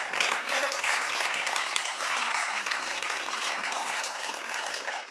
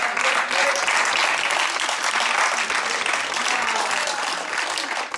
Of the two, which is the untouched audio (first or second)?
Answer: second